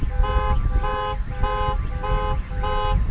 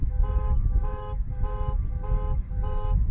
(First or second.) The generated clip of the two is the second